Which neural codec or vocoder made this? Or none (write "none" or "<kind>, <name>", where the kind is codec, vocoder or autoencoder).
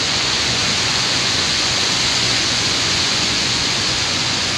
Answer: vocoder, Vocos